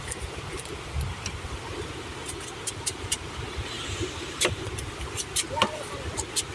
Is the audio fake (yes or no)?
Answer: no